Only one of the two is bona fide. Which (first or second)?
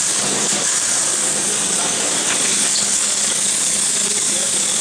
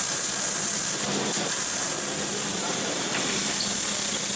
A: second